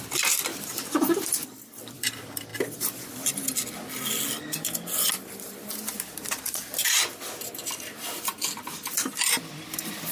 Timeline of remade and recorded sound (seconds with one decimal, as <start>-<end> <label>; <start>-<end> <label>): 0.0-2.5 remade; 2.5-6.4 recorded; 6.4-8.3 remade; 8.3-8.9 recorded; 8.9-10.1 remade